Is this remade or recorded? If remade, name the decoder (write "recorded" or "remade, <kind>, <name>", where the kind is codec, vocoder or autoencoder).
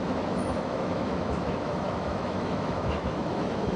remade, autoencoder, DAC-VAE